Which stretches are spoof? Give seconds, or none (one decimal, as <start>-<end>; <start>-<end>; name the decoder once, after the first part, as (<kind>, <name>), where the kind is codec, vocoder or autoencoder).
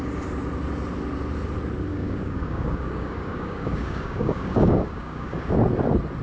1.9-5.6 (codec, DAC)